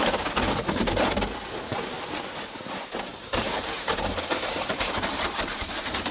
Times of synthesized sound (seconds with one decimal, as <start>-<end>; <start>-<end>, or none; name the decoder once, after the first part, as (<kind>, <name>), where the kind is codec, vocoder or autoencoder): 3.1-6.1 (vocoder, BigVGAN v2)